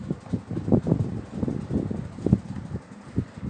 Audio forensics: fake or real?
real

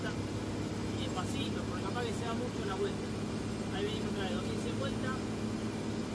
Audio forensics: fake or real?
real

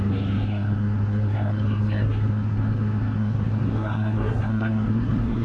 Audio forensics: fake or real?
fake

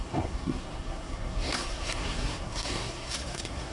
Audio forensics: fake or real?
fake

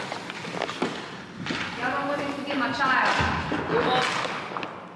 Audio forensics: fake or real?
real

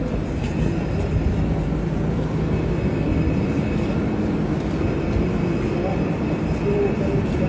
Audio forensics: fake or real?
real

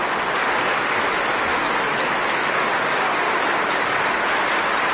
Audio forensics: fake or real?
real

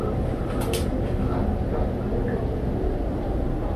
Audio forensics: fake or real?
real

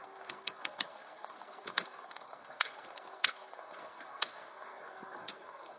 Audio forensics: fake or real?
fake